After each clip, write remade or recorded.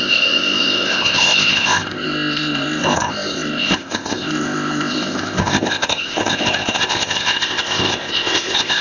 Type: remade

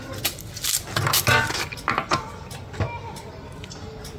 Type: recorded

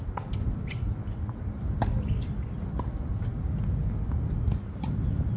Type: recorded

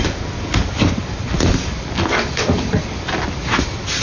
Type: recorded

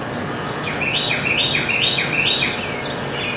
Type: recorded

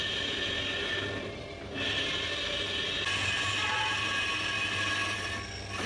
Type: recorded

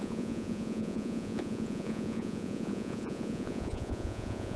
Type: remade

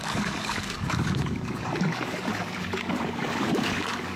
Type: remade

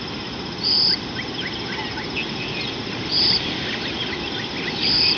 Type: recorded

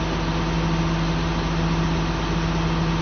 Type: recorded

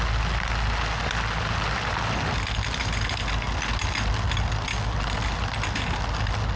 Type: recorded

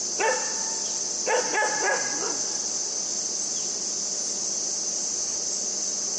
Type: recorded